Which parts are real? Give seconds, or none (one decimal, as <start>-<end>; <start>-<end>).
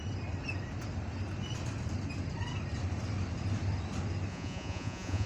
0.0-4.3